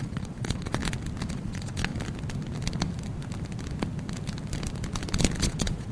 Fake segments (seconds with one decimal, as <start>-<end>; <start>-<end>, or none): 0.0-0.8; 1.3-1.9; 5.4-5.9